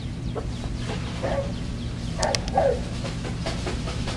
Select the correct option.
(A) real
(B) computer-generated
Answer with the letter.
A